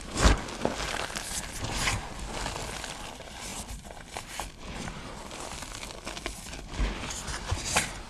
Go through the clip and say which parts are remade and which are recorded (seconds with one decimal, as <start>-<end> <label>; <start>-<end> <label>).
0.0-8.1 recorded